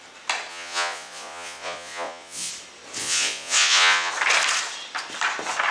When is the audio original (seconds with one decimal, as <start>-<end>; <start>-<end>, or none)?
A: 0.0-0.5; 2.5-3.0; 4.1-5.7